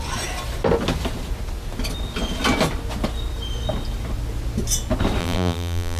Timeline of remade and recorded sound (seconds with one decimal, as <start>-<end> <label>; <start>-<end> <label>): 0.0-5.2 recorded; 5.2-6.0 remade